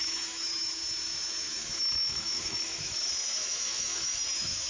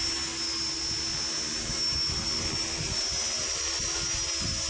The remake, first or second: first